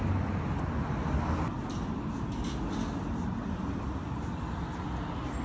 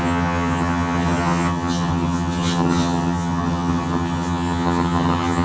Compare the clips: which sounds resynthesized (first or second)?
second